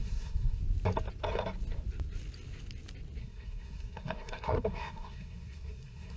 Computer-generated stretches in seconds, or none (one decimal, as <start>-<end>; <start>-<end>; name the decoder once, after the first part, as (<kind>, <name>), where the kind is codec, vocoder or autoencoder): 0.0-0.6 (codec, SNAC); 3.2-6.2